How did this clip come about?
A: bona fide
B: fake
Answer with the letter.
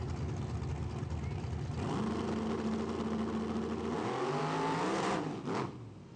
A